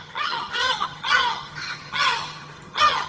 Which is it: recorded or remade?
remade